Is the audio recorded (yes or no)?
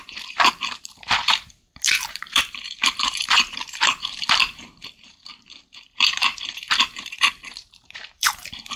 no